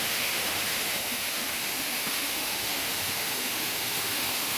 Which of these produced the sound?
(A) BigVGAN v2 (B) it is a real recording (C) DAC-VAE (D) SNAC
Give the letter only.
C